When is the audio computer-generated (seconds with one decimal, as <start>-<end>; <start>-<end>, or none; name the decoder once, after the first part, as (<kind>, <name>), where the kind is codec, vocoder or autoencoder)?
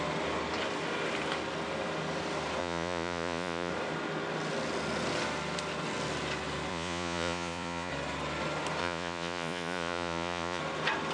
2.6-3.7 (vocoder, Vocos); 6.7-7.9; 8.8-10.6